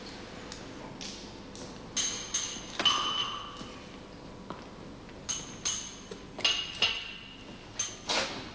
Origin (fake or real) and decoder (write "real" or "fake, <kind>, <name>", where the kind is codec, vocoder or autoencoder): real